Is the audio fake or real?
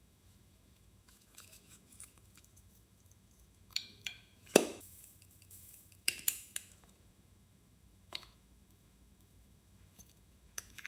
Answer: fake